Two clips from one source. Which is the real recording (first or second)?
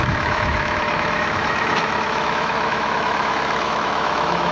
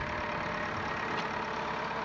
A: second